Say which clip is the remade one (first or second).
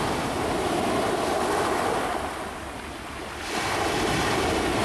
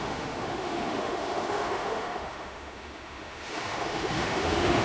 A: second